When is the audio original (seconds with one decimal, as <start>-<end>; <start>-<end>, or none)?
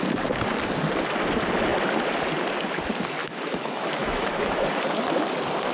0.0-3.2; 4.7-5.7